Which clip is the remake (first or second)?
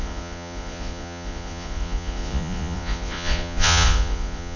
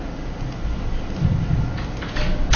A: first